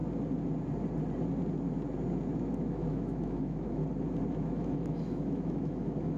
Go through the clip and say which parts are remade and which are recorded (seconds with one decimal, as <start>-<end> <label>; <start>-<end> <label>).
0.0-2.3 recorded; 2.3-3.8 remade; 3.8-4.3 recorded; 4.3-6.2 remade